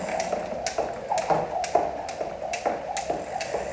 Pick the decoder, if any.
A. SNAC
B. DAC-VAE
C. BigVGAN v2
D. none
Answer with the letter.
D